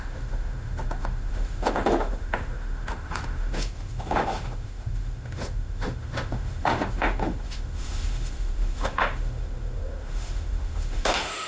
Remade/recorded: remade